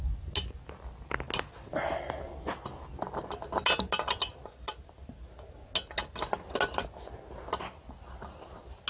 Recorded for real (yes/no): yes